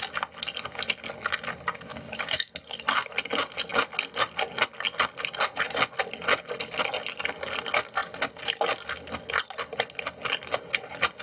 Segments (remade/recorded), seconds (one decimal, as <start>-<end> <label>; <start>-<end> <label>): 0.0-1.9 recorded; 1.9-2.5 remade; 2.5-11.2 recorded